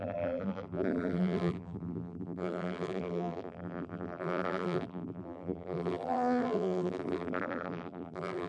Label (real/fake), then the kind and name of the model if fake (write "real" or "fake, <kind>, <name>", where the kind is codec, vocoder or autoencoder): fake, vocoder, BigVGAN v2